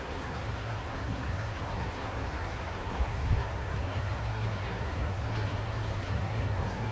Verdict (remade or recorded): remade